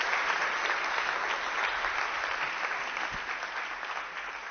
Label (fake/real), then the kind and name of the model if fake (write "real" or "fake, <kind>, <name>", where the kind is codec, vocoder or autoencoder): real